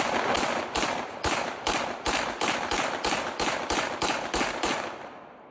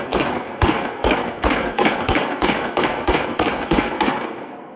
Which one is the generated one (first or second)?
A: second